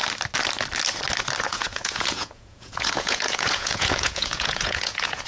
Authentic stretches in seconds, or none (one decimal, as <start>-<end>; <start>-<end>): 0.0-1.4